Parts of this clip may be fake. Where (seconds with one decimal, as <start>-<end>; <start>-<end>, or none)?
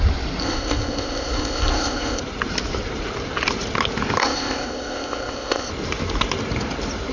0.4-2.2; 4.2-5.7